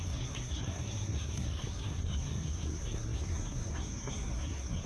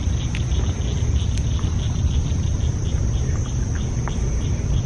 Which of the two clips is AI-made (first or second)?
first